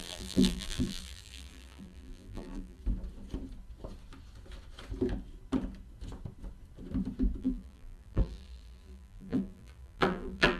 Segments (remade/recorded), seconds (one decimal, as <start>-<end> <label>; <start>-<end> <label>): 0.0-2.8 remade; 2.8-7.4 recorded; 7.4-10.6 remade